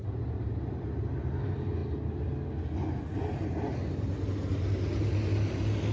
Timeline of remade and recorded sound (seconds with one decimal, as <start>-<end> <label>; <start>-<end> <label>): 0.0-5.9 recorded